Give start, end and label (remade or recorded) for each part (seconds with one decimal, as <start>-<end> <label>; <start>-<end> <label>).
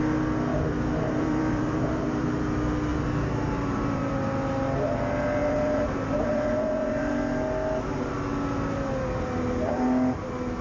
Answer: 0.0-0.5 recorded; 0.5-2.4 remade; 2.4-2.9 recorded; 2.9-4.1 remade; 4.1-5.4 recorded; 5.4-7.1 remade; 7.1-10.6 recorded